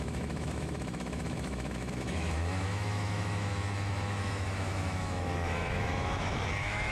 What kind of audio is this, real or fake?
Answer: fake